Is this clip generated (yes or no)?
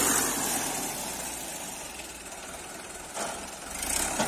no